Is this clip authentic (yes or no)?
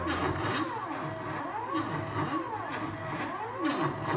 yes